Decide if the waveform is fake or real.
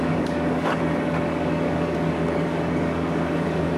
fake